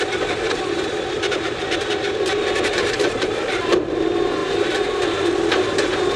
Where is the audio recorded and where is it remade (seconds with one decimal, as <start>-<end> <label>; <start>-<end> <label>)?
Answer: 0.0-6.2 remade